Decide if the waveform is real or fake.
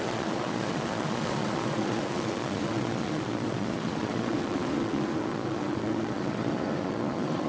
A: fake